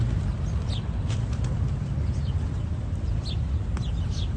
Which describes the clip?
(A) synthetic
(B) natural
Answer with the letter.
B